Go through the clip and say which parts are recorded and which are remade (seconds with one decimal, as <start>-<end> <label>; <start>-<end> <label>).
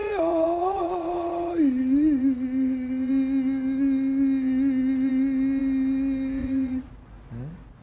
0.0-3.1 remade; 3.1-6.4 recorded; 6.4-6.9 remade; 6.9-7.8 recorded